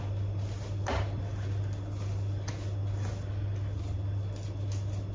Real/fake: real